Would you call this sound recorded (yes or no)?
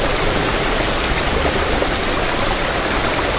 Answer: yes